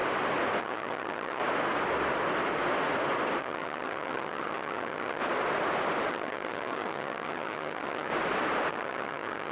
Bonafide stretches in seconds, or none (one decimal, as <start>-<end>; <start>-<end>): 0.0-0.6; 1.4-3.4; 5.2-6.1; 8.1-8.7